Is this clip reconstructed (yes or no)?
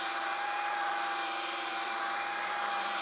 yes